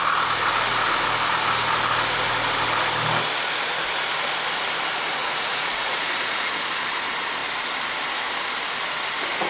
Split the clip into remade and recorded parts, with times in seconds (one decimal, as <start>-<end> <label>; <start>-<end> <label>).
0.0-5.2 recorded; 5.2-6.6 remade; 6.6-9.5 recorded